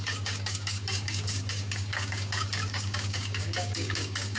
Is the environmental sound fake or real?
fake